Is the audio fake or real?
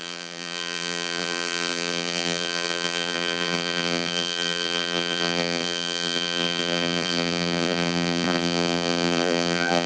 fake